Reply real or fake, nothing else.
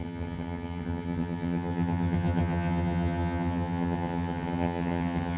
fake